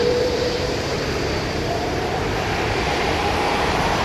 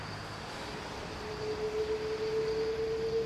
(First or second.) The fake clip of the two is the first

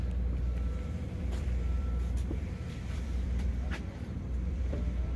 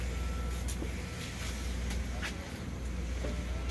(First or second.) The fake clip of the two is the first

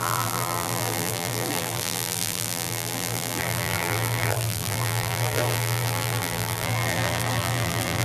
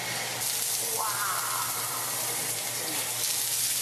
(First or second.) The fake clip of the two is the first